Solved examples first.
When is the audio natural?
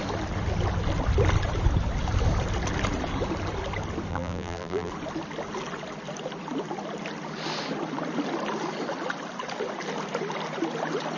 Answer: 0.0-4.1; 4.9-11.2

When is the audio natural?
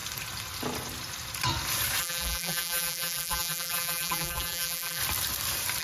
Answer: 0.0-2.0; 5.0-5.8